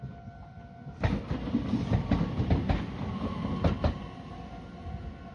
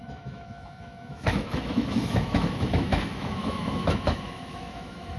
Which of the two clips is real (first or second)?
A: first